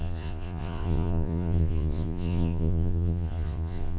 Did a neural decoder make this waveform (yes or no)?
yes